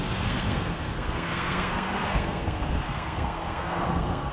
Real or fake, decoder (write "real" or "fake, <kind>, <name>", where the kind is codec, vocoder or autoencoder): fake, codec, SNAC